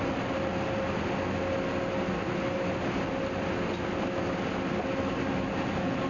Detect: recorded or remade recorded